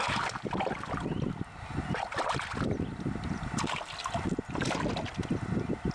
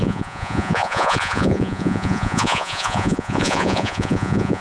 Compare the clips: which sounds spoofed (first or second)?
second